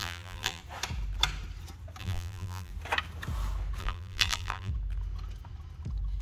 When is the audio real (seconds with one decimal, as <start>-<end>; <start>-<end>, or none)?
0.6-2.0; 2.7-3.8; 4.7-6.2